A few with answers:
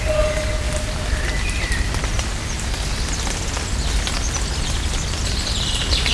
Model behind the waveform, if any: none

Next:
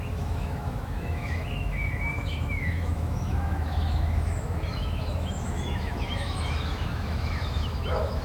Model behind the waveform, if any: autoencoder, DAC-VAE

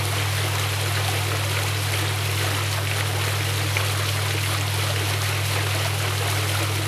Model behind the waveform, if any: none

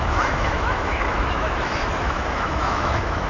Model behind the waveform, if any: autoencoder, DAC-VAE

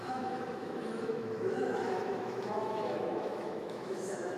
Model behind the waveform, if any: autoencoder, DAC-VAE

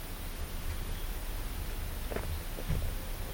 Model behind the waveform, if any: none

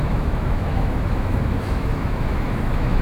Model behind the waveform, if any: autoencoder, DAC-VAE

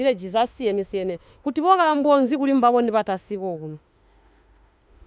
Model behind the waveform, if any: autoencoder, DAC-VAE